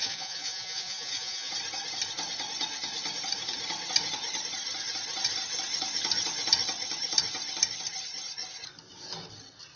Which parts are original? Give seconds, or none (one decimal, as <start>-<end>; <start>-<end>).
1.5-9.8